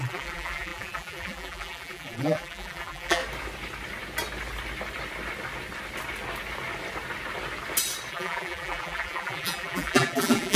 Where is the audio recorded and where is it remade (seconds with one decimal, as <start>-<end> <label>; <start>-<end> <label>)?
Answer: 0.0-3.2 remade; 3.2-8.1 recorded; 8.1-10.6 remade